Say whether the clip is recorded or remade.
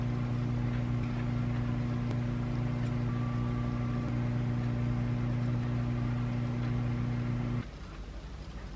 recorded